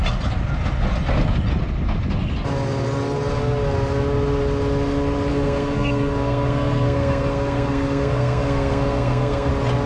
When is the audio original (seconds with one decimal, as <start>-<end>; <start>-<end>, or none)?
0.0-5.3; 9.5-9.9